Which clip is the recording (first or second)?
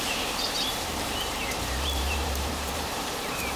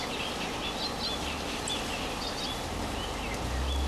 second